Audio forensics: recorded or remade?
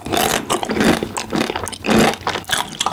recorded